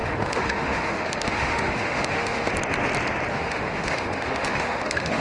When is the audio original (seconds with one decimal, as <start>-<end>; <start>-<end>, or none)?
2.5-3.3